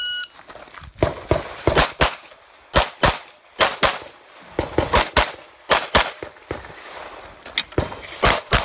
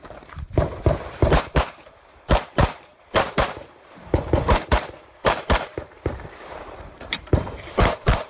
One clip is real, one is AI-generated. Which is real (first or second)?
first